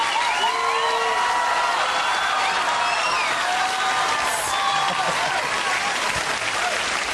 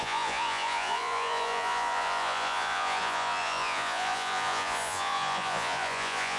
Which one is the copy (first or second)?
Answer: second